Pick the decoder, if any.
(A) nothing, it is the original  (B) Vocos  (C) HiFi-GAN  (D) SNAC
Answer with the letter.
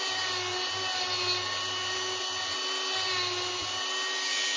A